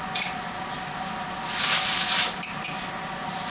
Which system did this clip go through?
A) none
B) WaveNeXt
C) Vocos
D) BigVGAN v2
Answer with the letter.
A